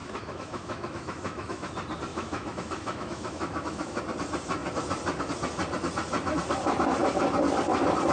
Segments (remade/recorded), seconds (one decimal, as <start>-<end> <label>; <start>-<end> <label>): 0.0-1.7 remade; 1.7-2.1 recorded; 2.1-4.0 remade; 4.0-8.1 recorded